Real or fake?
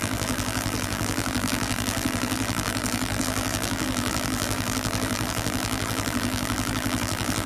fake